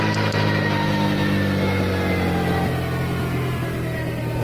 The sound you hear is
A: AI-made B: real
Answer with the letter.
B